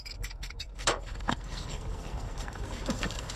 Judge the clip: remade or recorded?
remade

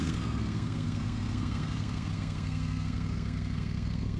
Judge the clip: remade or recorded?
remade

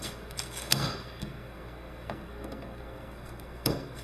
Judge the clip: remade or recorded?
remade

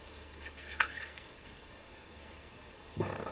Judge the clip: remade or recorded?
remade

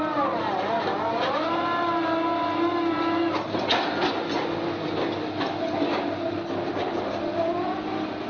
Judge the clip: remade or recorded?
recorded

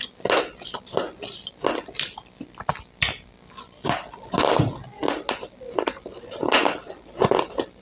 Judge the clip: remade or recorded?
recorded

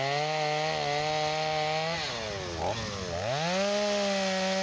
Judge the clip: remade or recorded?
recorded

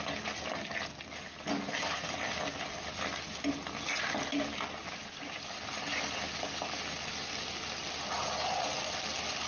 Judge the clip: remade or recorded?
recorded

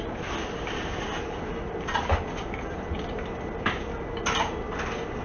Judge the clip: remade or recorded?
recorded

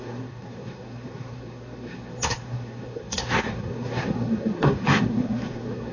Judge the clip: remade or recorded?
remade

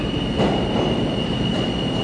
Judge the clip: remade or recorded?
recorded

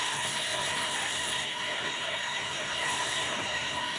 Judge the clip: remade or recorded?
remade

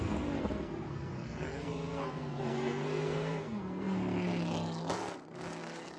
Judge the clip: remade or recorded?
remade